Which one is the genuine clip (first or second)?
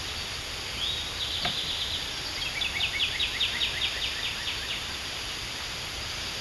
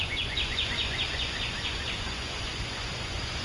first